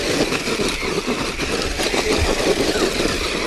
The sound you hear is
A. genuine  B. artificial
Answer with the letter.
A